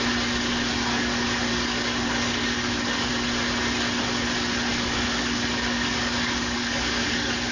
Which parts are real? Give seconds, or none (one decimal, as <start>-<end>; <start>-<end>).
0.0-1.5; 3.1-4.7